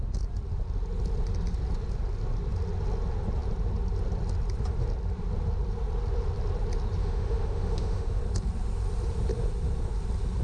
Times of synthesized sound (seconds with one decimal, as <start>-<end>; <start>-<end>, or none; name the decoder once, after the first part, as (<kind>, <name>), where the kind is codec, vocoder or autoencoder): 7.0-8.2 (autoencoder, DAC-VAE)